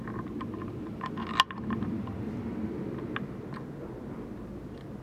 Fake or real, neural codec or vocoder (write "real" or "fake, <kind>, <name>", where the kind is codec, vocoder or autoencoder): real